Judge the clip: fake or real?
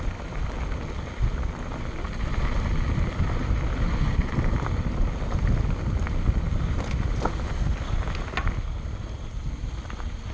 real